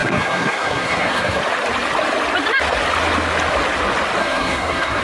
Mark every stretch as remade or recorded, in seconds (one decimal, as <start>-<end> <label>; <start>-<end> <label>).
0.0-1.4 remade; 1.4-4.2 recorded; 4.2-5.0 remade